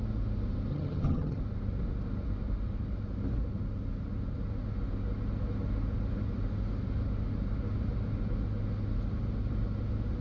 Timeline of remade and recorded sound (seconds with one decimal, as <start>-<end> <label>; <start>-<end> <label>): 0.0-0.7 recorded; 0.7-1.4 remade; 1.4-10.2 recorded